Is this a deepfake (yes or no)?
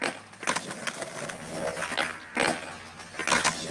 no